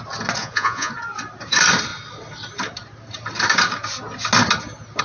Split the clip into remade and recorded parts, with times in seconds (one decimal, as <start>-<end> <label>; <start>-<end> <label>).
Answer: 0.0-0.4 recorded; 0.4-0.9 remade; 0.9-5.0 recorded